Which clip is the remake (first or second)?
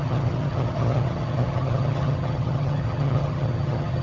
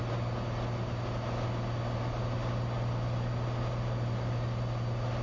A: first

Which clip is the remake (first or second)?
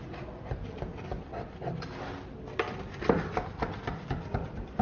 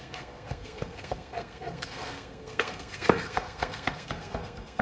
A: second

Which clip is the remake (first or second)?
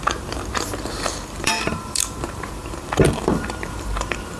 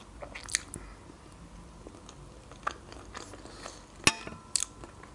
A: first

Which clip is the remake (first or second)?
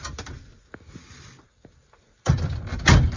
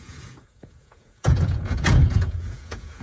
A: second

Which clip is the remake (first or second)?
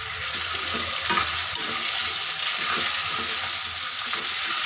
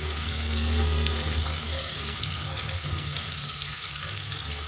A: second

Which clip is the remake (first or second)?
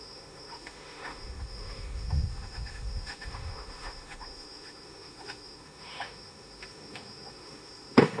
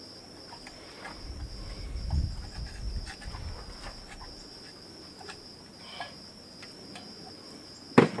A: first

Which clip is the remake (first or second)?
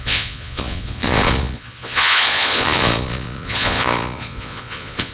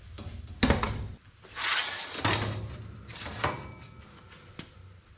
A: first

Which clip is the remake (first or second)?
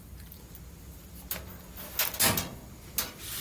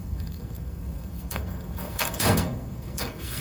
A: second